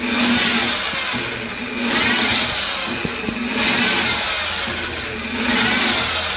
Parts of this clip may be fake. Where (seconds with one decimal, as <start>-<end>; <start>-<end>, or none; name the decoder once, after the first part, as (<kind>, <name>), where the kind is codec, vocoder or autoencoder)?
none